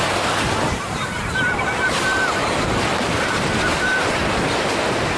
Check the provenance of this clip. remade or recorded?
recorded